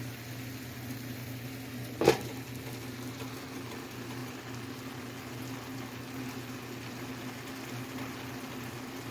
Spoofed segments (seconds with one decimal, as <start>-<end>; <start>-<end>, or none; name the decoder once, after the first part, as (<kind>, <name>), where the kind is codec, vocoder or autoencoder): none